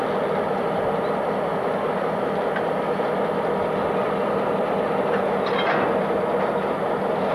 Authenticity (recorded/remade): recorded